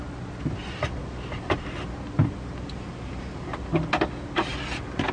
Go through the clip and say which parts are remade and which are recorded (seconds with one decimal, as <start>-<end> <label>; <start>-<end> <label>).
0.0-0.6 recorded; 0.6-3.7 remade; 3.7-5.1 recorded